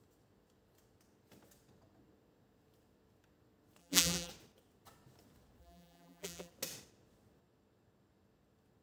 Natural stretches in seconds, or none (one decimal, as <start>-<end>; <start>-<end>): 0.0-3.8; 4.3-5.6; 6.5-8.8